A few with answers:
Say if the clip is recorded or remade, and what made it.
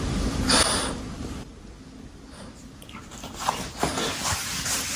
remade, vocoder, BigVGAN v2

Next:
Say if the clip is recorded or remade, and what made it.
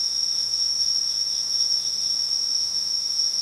remade, autoencoder, DAC-VAE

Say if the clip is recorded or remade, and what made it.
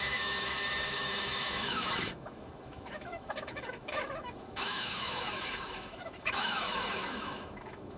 remade, autoencoder, DAC-VAE